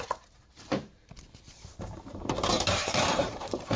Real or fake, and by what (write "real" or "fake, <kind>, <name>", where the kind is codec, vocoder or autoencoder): fake, vocoder, BigVGAN v2